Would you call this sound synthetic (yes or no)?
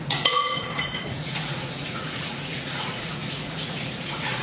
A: yes